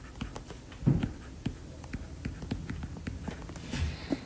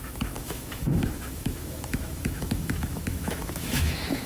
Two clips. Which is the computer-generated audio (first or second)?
second